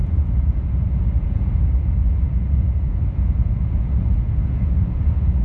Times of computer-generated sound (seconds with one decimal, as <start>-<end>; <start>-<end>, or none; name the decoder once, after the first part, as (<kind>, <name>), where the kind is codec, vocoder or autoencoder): 0.0-5.4 (vocoder, Vocos)